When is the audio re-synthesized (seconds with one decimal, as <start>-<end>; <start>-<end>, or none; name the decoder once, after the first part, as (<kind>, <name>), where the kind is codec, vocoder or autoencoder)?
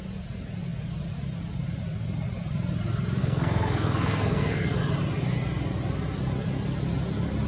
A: 3.2-4.8 (codec, SNAC)